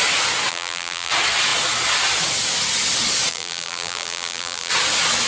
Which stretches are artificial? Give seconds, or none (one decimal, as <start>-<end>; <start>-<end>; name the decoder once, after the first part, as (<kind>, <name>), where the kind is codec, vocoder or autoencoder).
0.5-1.1 (vocoder, BigVGAN v2); 3.3-4.7